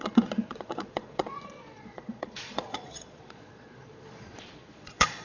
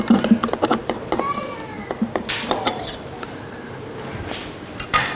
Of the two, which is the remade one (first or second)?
first